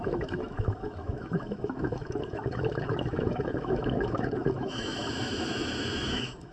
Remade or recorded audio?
remade